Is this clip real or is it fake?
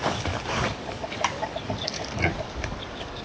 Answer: fake